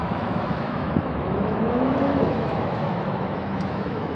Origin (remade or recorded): remade